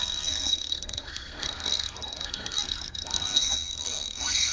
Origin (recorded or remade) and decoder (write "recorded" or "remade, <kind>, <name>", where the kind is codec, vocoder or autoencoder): remade, codec, SNAC